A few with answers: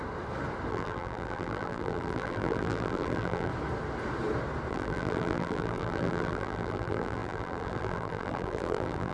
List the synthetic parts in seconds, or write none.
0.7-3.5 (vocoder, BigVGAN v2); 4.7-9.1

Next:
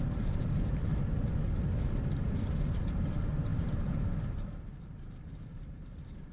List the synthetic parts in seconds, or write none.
0.0-0.9 (vocoder, BigVGAN v2); 1.8-6.3

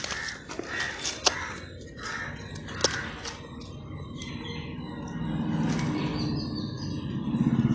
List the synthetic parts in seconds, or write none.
none

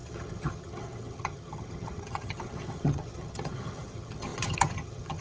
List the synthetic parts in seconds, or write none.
0.0-5.2 (vocoder, HiFi-GAN)